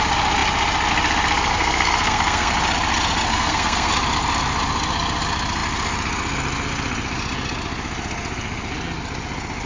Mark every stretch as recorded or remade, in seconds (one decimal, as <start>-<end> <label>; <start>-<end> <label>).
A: 0.0-1.5 recorded; 1.5-2.5 remade; 2.5-3.3 recorded; 3.3-3.9 remade; 3.9-9.7 recorded